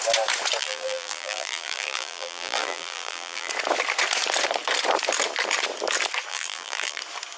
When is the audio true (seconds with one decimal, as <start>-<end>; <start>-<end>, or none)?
0.0-0.6; 3.5-6.3; 7.0-7.4